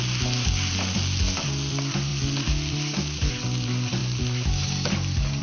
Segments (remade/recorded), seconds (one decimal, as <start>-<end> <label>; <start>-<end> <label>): 0.0-5.4 recorded